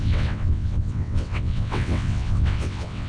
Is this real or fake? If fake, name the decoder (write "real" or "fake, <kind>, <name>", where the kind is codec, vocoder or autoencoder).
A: fake, vocoder, WaveNeXt